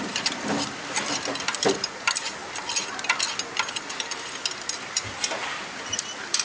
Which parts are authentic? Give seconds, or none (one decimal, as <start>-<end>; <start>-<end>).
2.4-4.8